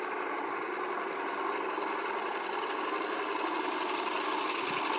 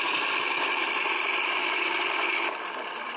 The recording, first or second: first